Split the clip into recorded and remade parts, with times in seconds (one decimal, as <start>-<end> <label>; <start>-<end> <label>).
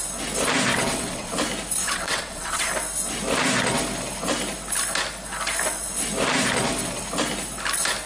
0.0-0.7 recorded; 0.7-1.3 remade; 1.3-1.8 recorded; 1.8-2.7 remade; 2.7-8.1 recorded